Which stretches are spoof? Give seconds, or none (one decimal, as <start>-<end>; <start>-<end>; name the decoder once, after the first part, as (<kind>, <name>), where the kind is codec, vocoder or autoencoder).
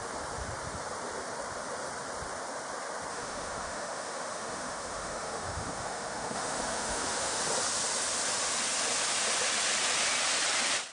3.1-7.4 (autoencoder, DAC-VAE)